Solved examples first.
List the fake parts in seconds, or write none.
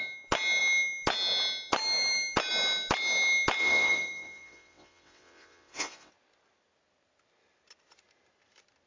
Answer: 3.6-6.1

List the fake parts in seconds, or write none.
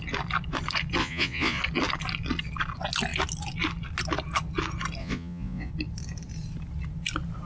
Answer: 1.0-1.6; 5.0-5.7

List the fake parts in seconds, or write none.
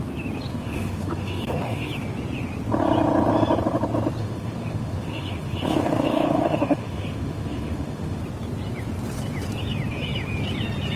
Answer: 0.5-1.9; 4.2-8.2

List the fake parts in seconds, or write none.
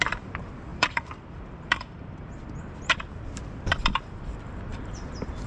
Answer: 0.0-5.5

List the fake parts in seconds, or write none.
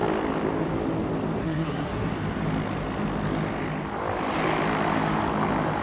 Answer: 1.4-2.1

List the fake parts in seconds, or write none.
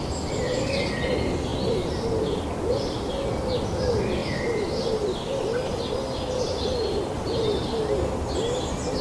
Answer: none